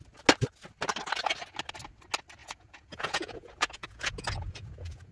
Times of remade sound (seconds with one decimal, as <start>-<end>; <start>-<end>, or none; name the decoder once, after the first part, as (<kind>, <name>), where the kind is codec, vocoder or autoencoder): 2.4-5.1 (vocoder, Vocos)